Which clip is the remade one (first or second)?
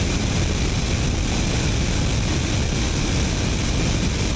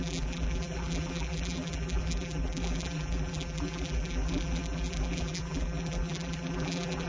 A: second